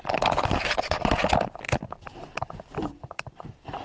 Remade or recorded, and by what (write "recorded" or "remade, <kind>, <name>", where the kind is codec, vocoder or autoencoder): recorded